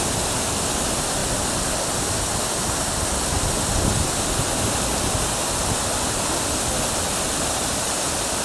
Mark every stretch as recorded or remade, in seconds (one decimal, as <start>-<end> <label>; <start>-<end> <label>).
0.0-8.4 recorded